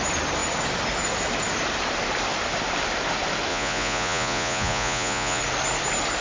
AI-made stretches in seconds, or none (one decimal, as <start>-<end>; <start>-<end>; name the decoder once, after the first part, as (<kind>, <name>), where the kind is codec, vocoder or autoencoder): 3.5-5.4 (vocoder, Vocos)